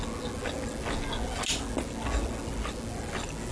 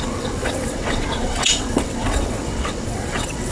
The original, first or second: first